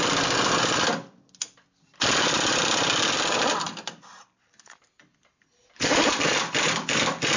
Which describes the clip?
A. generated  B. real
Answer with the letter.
B